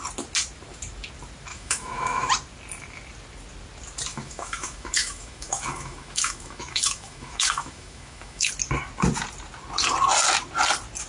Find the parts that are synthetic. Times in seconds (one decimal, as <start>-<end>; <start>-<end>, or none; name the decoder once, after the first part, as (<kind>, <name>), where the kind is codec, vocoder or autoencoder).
1.5-2.3 (autoencoder, DAC-VAE); 4.1-8.5